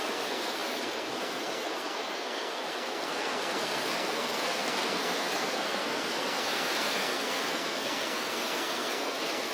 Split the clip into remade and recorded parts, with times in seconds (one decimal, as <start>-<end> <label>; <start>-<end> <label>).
0.0-9.5 remade